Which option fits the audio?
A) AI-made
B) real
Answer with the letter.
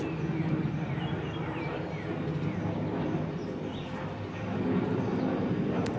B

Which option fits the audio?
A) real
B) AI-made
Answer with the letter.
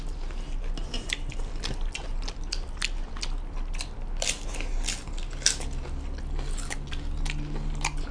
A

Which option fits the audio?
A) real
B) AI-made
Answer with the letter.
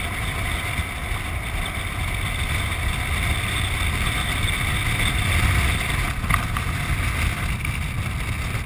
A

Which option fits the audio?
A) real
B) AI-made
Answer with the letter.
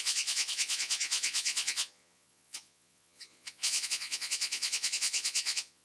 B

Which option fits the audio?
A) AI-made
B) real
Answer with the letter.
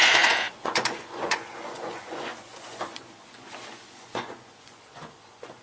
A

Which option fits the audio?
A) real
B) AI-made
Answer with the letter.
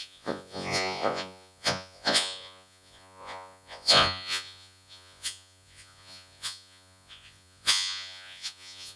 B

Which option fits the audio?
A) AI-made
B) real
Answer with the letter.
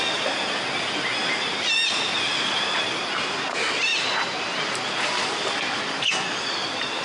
B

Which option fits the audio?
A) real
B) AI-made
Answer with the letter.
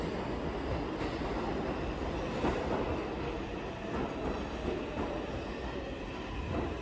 A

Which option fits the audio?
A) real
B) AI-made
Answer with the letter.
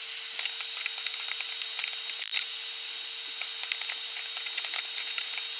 A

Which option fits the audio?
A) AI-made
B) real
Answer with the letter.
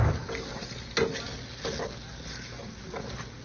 B